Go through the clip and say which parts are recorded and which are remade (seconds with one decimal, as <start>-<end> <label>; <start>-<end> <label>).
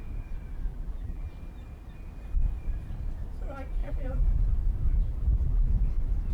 0.0-0.7 recorded; 0.7-1.3 remade; 1.3-3.8 recorded; 3.8-4.4 remade; 4.4-4.9 recorded; 4.9-5.7 remade; 5.7-6.3 recorded